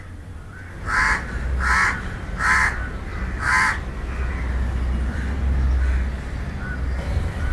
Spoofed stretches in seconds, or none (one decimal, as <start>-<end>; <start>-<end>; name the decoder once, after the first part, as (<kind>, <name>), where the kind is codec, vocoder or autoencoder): 3.1-3.9 (vocoder, BigVGAN v2)